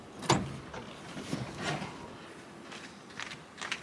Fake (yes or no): no